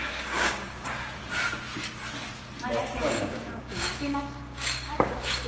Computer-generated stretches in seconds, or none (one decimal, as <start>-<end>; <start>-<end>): 0.0-1.2; 2.8-5.5